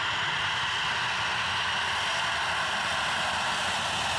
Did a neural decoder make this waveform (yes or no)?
no